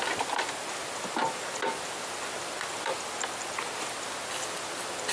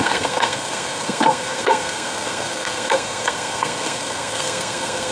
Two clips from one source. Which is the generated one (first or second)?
second